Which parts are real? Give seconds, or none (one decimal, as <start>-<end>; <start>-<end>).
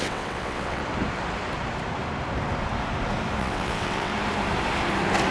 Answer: 0.8-3.4; 4.1-5.3